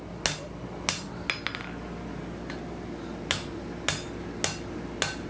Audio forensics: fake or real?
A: real